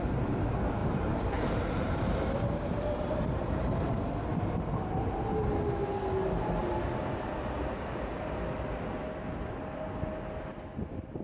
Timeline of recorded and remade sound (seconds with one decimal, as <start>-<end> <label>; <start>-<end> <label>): 0.0-0.8 recorded; 0.8-5.3 remade; 5.3-11.2 recorded